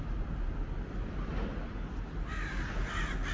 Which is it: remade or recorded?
recorded